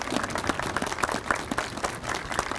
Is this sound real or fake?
real